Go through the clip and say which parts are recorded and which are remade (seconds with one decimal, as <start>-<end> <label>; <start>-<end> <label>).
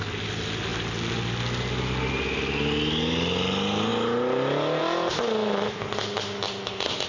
0.0-7.1 recorded